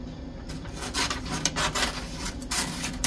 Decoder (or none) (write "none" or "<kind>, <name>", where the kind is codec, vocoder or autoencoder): none